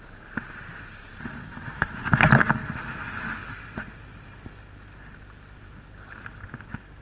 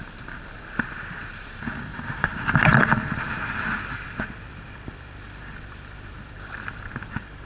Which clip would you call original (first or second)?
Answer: first